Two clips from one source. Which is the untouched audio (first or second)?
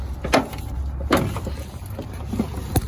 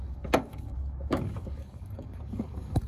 first